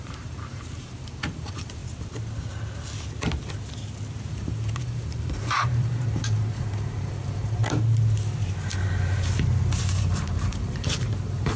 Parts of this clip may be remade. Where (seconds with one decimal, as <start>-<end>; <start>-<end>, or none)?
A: 0.0-1.8; 4.3-7.6; 9.8-11.6